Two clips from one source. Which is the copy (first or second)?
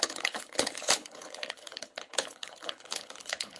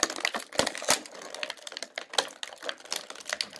first